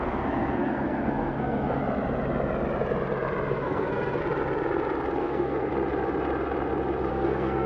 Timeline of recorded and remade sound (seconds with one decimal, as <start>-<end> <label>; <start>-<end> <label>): 0.0-1.8 remade; 1.8-3.5 recorded; 3.5-4.2 remade; 4.2-5.2 recorded; 5.2-5.7 remade; 5.7-7.1 recorded; 7.1-7.7 remade